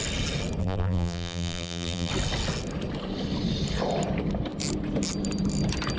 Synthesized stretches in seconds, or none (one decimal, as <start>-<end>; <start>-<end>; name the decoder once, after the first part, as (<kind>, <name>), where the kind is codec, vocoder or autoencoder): 0.6-2.1 (vocoder, BigVGAN v2)